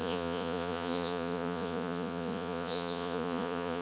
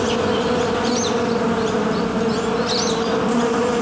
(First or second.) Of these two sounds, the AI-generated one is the first